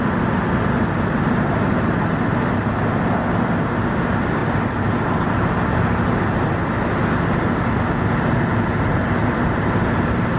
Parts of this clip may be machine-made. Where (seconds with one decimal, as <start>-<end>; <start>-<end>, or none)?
9.2-10.4

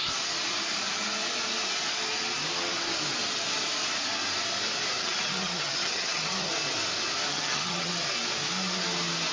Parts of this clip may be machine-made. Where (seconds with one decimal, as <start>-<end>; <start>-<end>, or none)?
5.0-6.5; 7.3-7.9

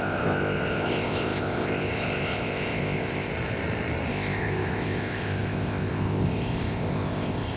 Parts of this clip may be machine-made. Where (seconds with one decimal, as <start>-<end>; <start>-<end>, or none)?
0.0-3.3; 4.1-7.6

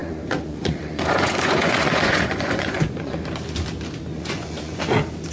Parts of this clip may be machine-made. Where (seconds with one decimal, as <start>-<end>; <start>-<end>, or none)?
0.0-3.2; 4.1-4.8

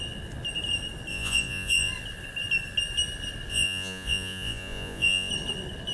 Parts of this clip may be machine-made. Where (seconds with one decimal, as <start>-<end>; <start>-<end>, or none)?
1.1-1.9; 3.5-5.3

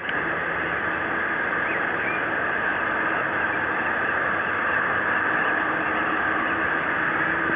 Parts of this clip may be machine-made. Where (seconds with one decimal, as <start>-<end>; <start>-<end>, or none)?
none

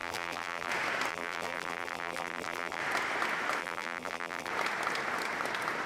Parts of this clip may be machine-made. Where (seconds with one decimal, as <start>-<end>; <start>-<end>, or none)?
0.0-0.7; 1.1-2.8; 3.6-4.5